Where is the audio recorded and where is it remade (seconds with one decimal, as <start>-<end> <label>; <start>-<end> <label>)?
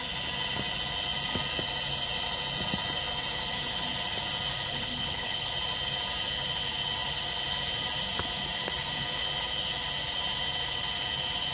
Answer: 0.0-4.7 recorded; 4.7-5.5 remade; 5.5-11.5 recorded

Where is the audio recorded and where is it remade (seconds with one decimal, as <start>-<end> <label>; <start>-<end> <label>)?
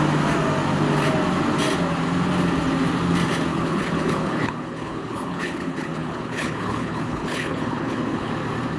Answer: 0.0-3.5 recorded; 3.5-8.3 remade; 8.3-8.8 recorded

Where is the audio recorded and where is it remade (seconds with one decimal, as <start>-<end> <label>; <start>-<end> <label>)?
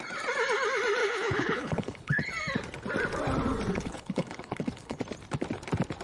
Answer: 0.0-1.0 recorded; 1.0-2.3 remade; 2.3-3.7 recorded; 3.7-5.0 remade; 5.0-6.0 recorded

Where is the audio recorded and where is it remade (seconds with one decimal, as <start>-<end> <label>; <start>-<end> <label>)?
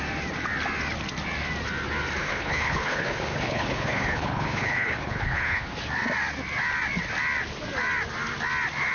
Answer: 0.0-2.2 recorded; 2.2-5.7 remade; 5.7-8.9 recorded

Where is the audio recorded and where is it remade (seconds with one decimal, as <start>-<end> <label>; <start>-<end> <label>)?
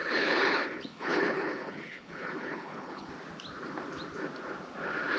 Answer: 0.0-3.1 remade; 3.1-5.2 recorded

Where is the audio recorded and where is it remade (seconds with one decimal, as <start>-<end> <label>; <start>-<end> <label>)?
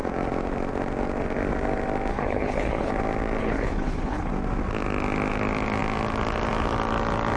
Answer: 0.0-2.1 recorded; 2.1-2.9 remade; 2.9-3.4 recorded; 3.4-4.3 remade; 4.3-7.4 recorded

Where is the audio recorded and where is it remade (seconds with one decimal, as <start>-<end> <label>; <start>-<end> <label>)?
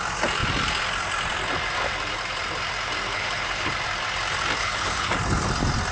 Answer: 0.0-3.1 recorded; 3.1-3.7 remade; 3.7-4.6 recorded; 4.6-5.1 remade; 5.1-5.9 recorded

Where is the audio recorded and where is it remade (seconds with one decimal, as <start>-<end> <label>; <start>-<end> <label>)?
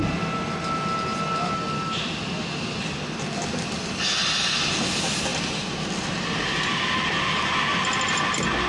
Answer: 0.0-8.7 recorded